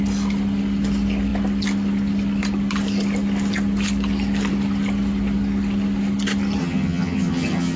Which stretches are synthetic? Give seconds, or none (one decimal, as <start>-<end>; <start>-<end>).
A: 6.6-7.8